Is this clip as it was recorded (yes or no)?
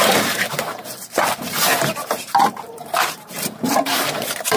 no